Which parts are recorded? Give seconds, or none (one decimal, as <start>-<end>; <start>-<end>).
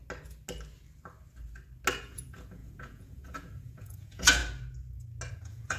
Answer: 0.0-2.0; 4.4-5.3